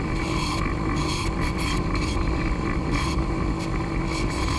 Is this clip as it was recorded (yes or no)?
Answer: yes